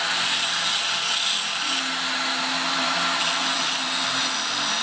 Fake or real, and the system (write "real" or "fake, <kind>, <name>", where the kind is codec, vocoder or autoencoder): real